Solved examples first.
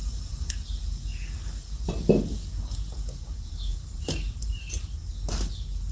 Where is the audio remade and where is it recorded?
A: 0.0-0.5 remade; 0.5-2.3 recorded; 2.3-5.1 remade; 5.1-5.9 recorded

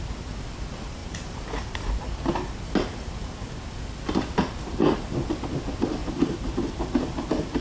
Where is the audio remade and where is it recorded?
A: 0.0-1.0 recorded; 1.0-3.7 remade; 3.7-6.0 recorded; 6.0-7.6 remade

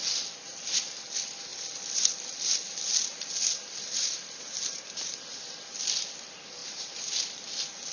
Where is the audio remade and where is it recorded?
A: 0.0-1.5 recorded; 1.5-5.8 remade; 5.8-6.6 recorded; 6.6-7.4 remade; 7.4-7.9 recorded